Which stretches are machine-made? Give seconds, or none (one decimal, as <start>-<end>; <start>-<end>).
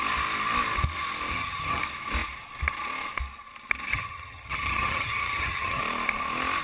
1.3-1.8; 3.9-5.8